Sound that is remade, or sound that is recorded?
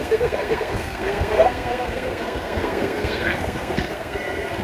remade